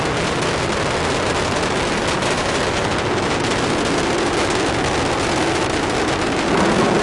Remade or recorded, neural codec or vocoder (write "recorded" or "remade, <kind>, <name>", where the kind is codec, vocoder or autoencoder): recorded